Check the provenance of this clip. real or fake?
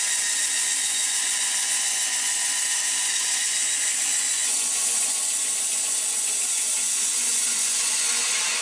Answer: fake